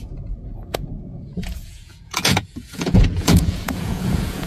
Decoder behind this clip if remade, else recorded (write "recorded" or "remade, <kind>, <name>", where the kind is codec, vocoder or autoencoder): remade, vocoder, Vocos